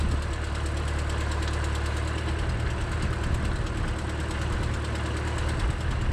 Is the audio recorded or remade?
recorded